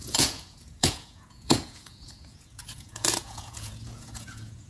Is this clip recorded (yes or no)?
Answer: no